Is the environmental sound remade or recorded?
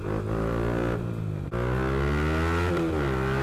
recorded